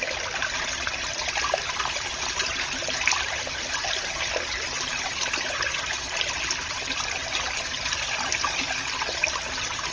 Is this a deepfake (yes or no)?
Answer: no